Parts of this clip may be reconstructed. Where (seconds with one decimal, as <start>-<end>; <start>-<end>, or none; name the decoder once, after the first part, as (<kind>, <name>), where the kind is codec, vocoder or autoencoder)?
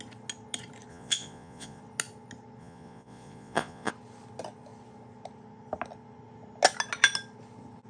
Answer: 0.9-1.8 (vocoder, Vocos); 2.6-3.9